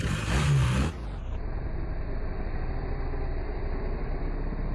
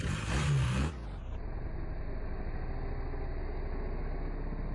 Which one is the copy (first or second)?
first